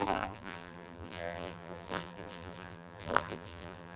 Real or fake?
fake